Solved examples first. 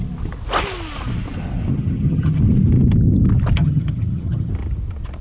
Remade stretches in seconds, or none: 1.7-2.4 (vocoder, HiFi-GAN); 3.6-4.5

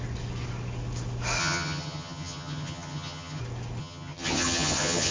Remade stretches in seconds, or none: 1.4-3.4 (vocoder, HiFi-GAN); 3.8-5.1

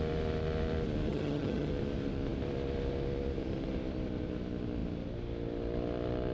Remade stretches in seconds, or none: 1.1-1.7 (vocoder, HiFi-GAN)

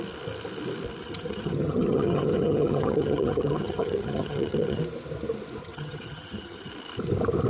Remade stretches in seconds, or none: 1.0-4.8 (vocoder, HiFi-GAN); 5.6-6.7